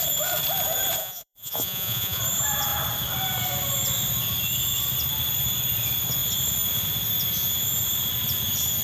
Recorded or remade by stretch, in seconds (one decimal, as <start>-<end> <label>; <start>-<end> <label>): 0.0-1.0 recorded; 1.0-2.2 remade; 2.2-8.8 recorded